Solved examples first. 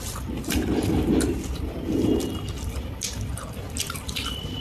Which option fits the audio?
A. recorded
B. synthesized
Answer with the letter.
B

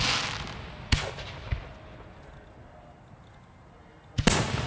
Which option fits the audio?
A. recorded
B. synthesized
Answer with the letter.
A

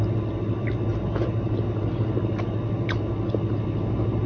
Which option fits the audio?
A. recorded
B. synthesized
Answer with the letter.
A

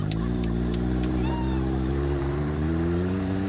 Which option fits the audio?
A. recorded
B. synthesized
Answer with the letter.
B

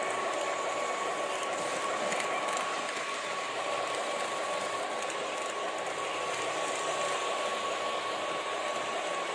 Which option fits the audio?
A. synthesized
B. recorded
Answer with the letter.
B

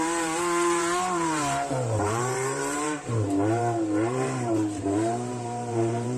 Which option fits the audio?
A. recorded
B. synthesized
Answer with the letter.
B